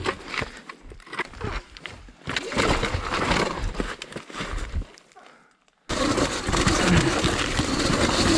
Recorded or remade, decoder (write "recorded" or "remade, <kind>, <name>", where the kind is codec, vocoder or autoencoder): recorded